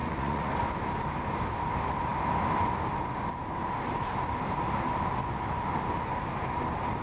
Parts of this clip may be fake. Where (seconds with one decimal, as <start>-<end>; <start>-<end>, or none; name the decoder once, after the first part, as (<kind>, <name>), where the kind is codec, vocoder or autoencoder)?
0.0-0.5 (vocoder, Vocos)